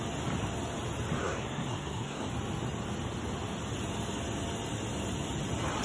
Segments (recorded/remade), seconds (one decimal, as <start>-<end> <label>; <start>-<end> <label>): 0.0-1.2 recorded; 1.2-2.3 remade; 2.3-5.8 recorded